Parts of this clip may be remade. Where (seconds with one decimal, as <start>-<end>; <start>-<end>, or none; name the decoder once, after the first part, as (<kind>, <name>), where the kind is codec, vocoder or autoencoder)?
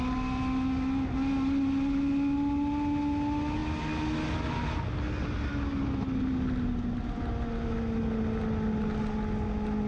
none